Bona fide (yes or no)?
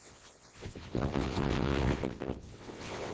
no